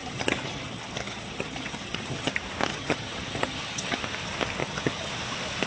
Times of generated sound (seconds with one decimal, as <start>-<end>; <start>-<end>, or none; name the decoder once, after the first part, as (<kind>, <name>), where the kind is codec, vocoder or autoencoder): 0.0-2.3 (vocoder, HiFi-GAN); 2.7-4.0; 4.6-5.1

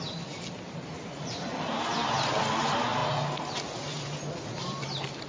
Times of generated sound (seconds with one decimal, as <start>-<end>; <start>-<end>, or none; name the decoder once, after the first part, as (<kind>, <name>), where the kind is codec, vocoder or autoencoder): none

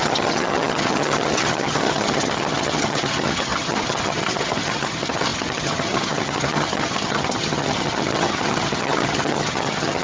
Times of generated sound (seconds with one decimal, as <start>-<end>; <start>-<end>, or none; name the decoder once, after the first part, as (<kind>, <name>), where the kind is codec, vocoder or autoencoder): 0.0-10.0 (vocoder, HiFi-GAN)

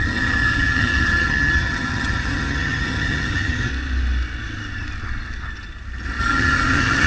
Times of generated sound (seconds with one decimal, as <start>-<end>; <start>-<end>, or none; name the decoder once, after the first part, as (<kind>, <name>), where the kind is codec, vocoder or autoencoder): 0.0-3.7 (vocoder, HiFi-GAN); 6.2-7.1